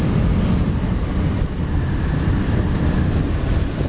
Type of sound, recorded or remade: recorded